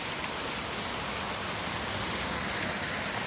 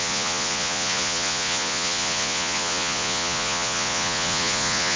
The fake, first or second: second